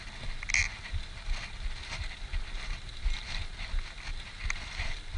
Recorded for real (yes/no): yes